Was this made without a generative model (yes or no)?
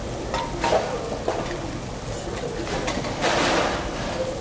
yes